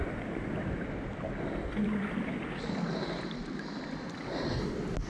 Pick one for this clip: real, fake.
real